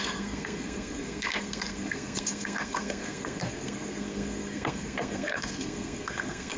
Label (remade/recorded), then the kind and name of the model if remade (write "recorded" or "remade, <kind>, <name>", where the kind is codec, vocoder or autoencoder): remade, codec, SNAC